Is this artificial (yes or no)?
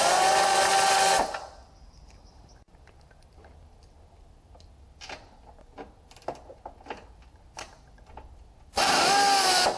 no